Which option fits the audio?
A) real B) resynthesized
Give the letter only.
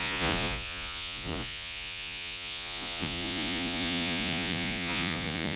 B